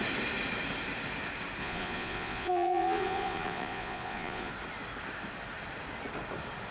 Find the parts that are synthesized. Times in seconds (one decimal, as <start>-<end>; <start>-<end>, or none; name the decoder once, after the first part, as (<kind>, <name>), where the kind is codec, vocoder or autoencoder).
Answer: 1.6-4.5 (vocoder, Vocos)